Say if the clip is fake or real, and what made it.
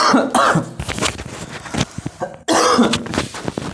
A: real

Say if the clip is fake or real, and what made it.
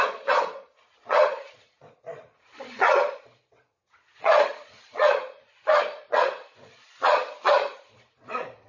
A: fake, vocoder, Vocos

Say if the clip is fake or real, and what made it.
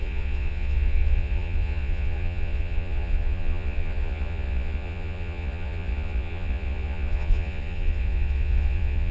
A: fake, vocoder, Vocos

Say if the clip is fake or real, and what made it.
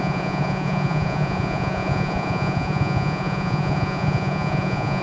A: fake, vocoder, Vocos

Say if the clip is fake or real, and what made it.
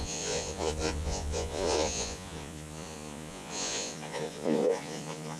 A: fake, vocoder, Vocos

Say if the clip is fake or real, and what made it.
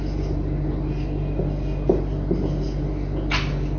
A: real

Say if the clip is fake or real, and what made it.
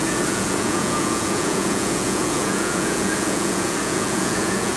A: fake, vocoder, Vocos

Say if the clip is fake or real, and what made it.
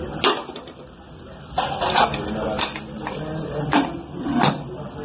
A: real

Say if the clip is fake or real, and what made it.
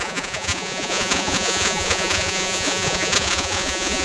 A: fake, vocoder, Vocos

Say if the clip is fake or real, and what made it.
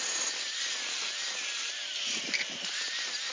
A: real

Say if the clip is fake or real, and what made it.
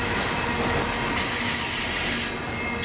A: real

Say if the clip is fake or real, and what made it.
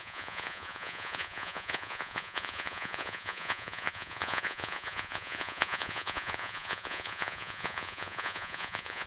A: fake, vocoder, Vocos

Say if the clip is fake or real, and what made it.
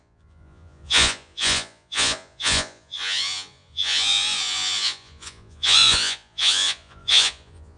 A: fake, vocoder, Vocos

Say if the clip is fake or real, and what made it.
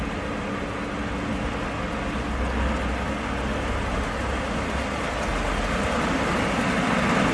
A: real